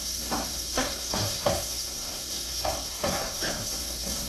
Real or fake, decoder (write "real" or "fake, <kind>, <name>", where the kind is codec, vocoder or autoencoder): fake, codec, SNAC